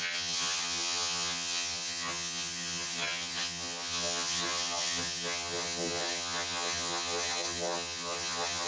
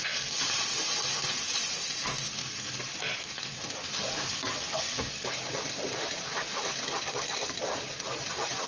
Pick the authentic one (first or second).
second